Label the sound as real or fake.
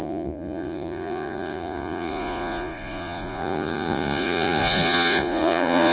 fake